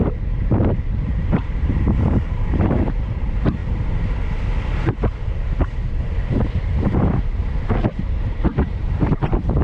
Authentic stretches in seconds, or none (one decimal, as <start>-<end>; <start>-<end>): 3.6-6.8; 7.4-8.0